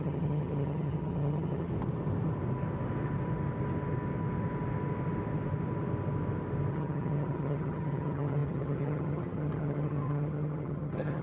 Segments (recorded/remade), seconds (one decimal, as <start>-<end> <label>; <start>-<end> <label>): 0.0-1.7 remade; 1.7-6.7 recorded; 6.7-11.2 remade